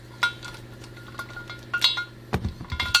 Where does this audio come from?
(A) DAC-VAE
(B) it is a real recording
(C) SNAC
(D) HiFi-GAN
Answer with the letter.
B